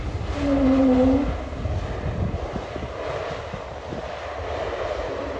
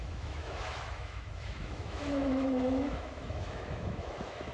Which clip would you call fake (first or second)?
second